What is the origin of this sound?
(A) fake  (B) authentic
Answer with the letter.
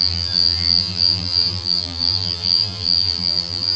A